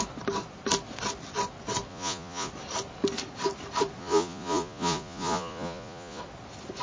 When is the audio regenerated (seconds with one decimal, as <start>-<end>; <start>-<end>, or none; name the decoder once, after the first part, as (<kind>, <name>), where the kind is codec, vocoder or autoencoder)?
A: 1.9-2.5 (vocoder, Vocos); 4.0-6.2